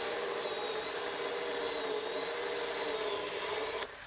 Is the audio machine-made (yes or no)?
no